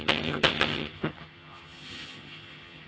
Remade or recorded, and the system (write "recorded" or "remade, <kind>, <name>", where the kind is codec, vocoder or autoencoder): remade, vocoder, HiFi-GAN